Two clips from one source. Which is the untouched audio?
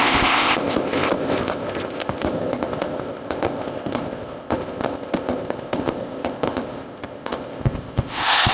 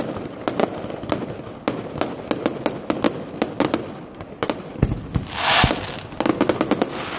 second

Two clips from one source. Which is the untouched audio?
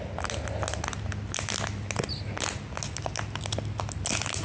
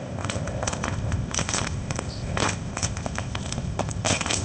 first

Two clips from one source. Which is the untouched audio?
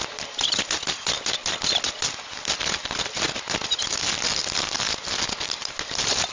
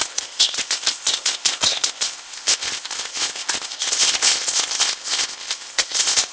first